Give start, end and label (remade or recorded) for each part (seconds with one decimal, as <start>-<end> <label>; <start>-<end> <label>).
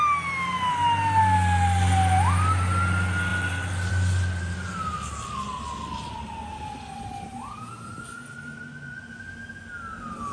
0.0-10.3 recorded